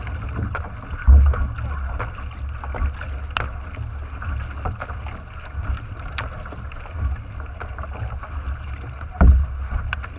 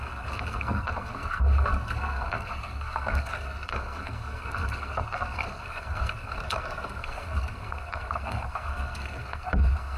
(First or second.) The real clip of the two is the first